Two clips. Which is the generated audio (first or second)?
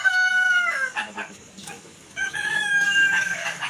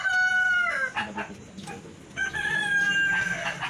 first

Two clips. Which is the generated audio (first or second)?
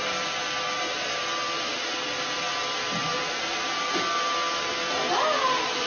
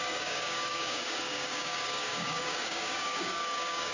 second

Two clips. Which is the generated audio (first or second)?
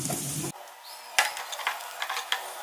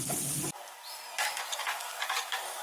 second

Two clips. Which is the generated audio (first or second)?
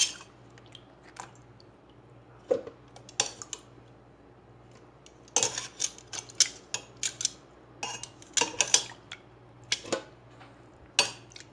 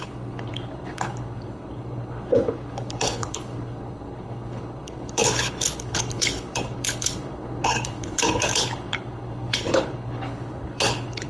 second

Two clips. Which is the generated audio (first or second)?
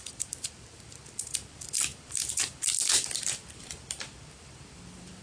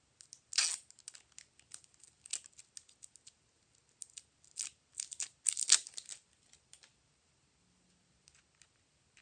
first